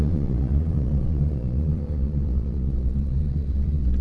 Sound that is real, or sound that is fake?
fake